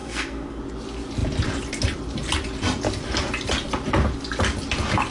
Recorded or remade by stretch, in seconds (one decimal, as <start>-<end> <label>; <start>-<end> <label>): 0.0-0.6 remade; 0.6-5.1 recorded